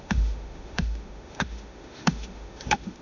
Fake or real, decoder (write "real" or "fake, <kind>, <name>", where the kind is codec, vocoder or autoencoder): fake, autoencoder, DAC-VAE